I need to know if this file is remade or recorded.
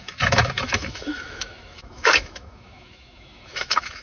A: remade